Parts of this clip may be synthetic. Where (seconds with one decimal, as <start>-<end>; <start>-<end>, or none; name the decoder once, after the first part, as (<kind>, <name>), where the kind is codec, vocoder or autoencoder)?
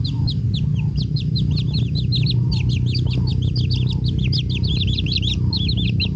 none